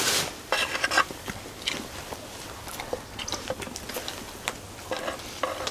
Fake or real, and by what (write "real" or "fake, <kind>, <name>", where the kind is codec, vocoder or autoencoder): real